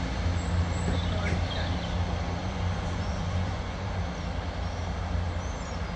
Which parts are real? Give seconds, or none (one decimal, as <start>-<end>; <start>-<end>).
0.0-2.4; 4.0-6.0